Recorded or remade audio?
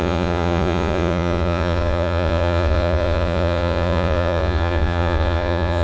remade